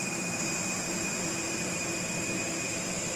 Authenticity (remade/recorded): recorded